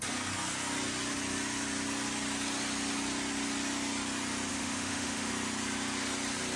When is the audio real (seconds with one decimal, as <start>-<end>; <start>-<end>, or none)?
0.0-4.5; 5.3-6.6

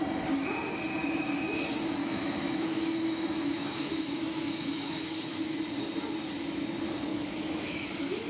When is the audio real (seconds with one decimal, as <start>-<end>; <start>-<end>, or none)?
0.0-1.0; 1.6-2.0; 5.6-7.1

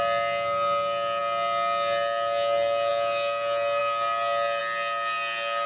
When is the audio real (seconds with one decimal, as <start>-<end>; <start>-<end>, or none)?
0.0-5.7

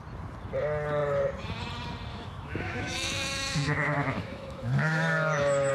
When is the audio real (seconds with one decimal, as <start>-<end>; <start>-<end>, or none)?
0.0-2.1

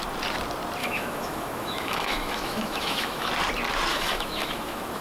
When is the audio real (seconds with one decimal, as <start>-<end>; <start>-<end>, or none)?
0.0-0.8; 3.3-3.9

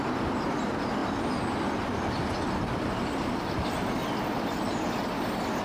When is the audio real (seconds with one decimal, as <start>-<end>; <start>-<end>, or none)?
0.0-5.6

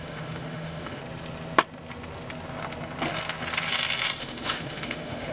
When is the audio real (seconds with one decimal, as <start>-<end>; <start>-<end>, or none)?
1.0-4.2

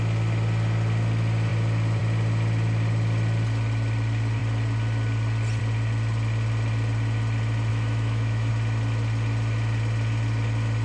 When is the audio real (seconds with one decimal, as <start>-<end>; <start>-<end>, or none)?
0.0-7.7; 8.5-10.8